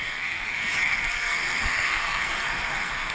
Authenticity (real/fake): fake